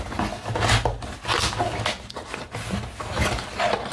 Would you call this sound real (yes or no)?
yes